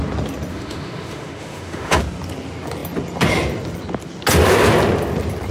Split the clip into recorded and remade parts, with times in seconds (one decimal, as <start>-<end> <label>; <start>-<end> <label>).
0.0-0.5 recorded; 0.5-2.0 remade; 2.0-5.5 recorded